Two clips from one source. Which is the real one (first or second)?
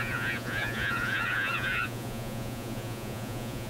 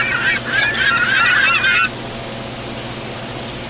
second